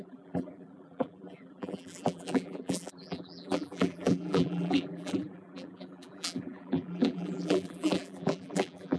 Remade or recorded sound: remade